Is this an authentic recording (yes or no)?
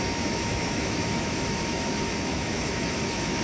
no